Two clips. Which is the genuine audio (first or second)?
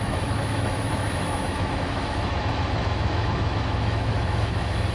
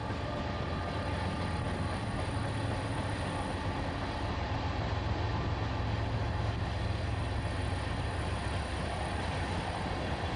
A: second